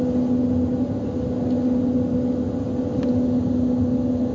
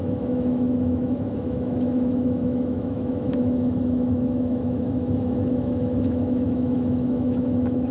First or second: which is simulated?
second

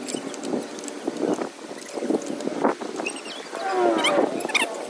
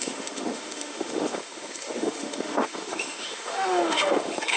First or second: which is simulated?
second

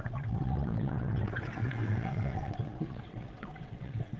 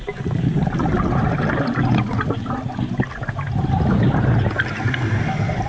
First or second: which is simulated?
first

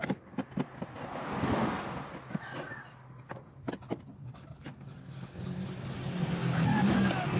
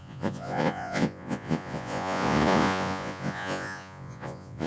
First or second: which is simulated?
second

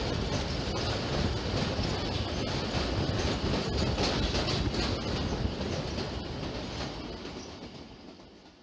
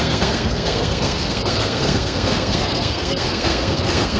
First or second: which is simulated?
second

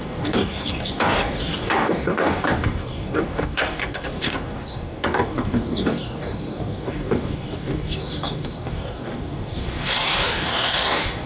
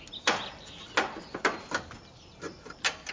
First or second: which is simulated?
first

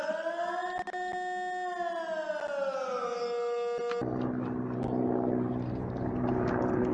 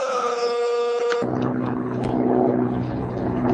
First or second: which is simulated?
second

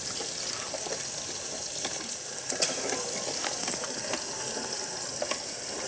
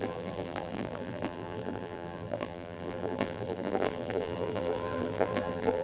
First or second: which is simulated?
second